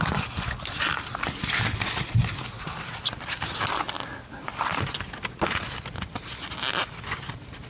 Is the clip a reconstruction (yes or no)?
no